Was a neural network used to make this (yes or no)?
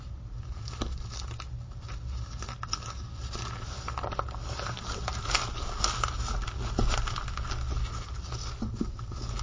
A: no